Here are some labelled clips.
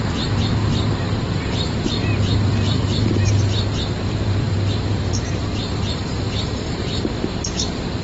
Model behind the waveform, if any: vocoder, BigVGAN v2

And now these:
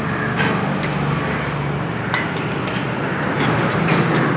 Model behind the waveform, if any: none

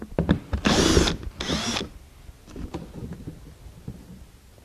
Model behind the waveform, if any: none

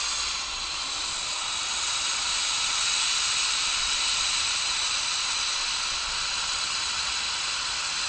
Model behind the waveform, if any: none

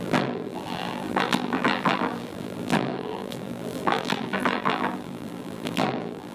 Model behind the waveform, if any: vocoder, BigVGAN v2